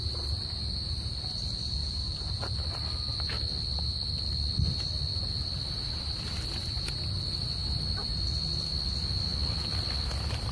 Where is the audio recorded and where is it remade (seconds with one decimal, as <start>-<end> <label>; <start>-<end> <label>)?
0.0-10.5 recorded